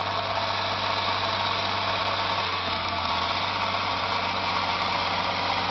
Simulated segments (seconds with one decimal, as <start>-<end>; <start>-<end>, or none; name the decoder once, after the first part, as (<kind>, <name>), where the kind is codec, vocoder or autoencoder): 2.4-3.1 (codec, SNAC)